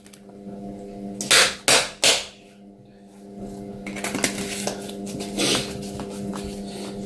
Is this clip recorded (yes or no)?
yes